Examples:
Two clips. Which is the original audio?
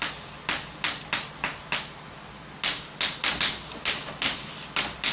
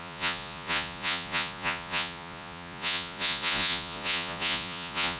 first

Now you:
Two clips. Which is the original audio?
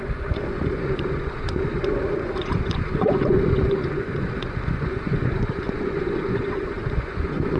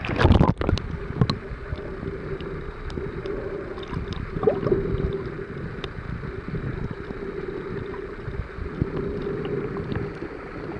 second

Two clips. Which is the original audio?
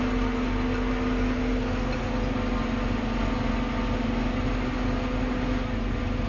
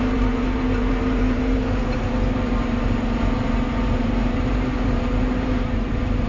first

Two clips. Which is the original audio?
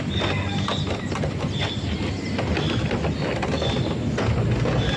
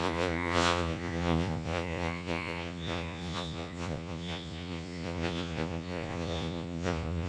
first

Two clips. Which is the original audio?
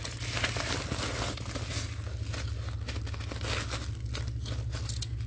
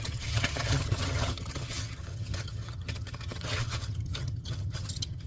first